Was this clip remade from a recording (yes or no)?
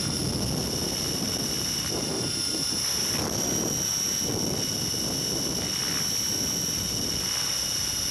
no